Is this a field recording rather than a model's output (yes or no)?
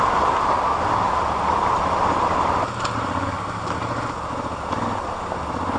yes